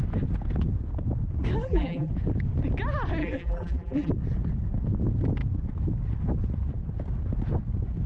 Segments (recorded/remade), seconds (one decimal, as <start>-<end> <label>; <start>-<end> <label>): 0.0-1.6 recorded; 1.6-2.1 remade; 2.1-3.2 recorded; 3.2-4.1 remade; 4.1-8.1 recorded